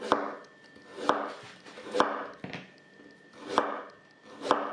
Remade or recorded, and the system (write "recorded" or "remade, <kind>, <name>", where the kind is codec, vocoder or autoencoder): recorded